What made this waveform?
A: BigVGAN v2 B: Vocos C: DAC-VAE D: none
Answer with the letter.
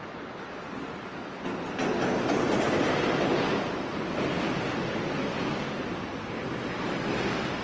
D